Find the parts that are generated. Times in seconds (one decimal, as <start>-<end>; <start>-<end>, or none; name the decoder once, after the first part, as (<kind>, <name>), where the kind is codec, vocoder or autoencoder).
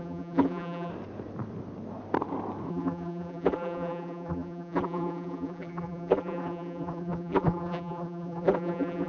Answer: 0.0-0.9 (vocoder, BigVGAN v2); 2.7-9.1